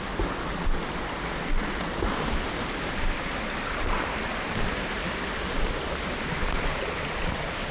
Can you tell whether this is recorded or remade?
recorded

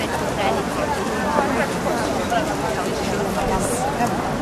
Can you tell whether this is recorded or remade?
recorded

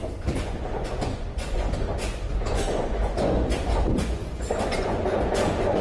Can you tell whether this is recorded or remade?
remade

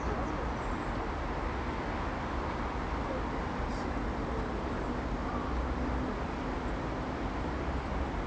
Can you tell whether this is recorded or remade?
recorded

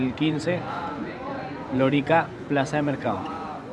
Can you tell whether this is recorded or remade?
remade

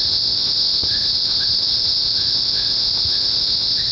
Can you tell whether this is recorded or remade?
remade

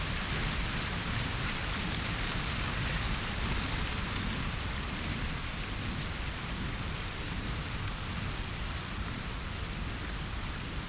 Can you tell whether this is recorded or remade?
remade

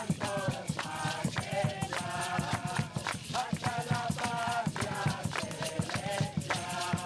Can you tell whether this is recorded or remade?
remade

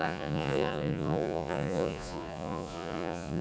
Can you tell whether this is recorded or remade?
remade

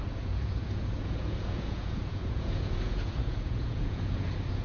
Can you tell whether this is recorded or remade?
remade